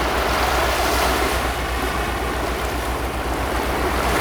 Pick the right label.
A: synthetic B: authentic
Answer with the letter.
B